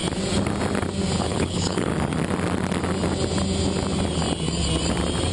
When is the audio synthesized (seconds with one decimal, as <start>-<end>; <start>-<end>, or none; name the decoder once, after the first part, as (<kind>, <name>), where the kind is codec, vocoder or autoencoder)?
1.2-1.9 (codec, HILCodec)